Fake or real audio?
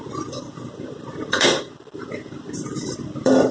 fake